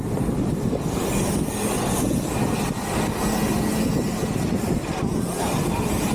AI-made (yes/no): no